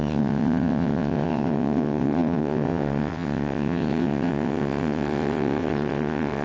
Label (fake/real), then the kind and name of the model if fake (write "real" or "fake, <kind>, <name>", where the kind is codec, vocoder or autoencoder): fake, vocoder, WaveNeXt